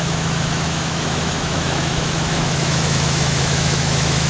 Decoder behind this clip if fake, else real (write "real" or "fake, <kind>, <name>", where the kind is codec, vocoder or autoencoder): fake, autoencoder, DAC-VAE